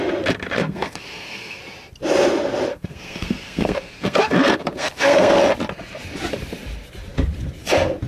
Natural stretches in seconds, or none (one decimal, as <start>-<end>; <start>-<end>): 0.0-0.6; 1.6-2.7; 5.4-8.1